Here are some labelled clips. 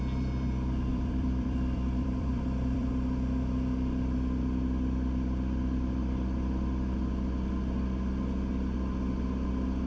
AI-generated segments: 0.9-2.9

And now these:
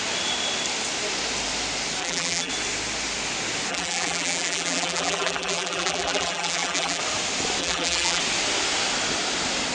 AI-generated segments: 2.0-2.5; 3.7-7.0; 7.6-8.2

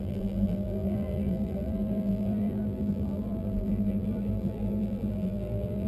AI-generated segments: 0.0-5.9

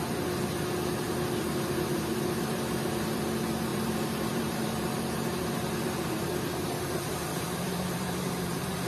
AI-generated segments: 1.9-3.2; 3.7-8.9